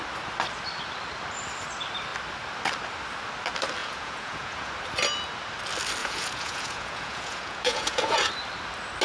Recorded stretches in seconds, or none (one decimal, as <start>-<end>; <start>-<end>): 0.0-3.8; 4.7-6.0; 8.3-9.0